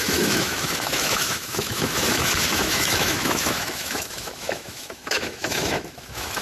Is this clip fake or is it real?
fake